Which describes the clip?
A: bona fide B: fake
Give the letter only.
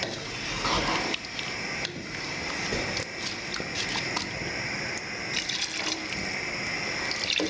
A